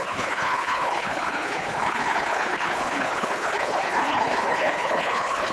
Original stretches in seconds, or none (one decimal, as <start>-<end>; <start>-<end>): none